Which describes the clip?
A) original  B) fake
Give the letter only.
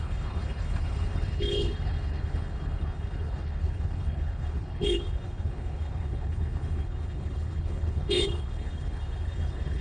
B